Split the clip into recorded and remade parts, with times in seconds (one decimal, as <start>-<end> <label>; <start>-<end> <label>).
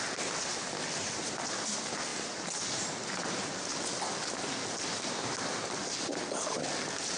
0.0-7.2 recorded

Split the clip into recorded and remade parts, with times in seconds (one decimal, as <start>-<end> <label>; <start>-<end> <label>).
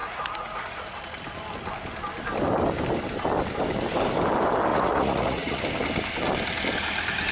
0.0-1.0 remade; 1.0-4.7 recorded; 4.7-5.6 remade; 5.6-7.3 recorded